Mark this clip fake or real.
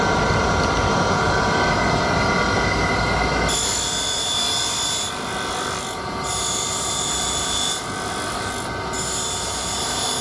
real